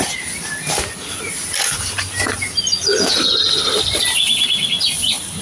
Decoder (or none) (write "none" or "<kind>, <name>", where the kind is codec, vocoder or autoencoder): none